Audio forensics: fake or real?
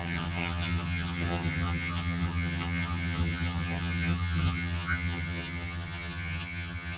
fake